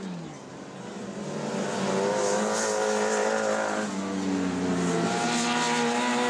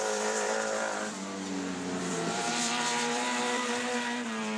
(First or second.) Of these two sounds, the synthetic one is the second